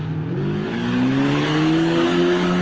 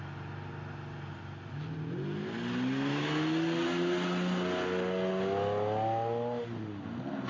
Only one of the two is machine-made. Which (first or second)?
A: first